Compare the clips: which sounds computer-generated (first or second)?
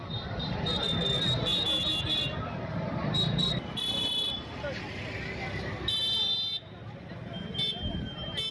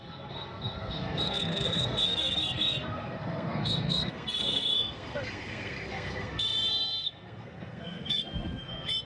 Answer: second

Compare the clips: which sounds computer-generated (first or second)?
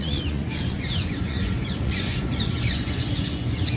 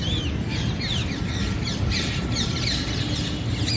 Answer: first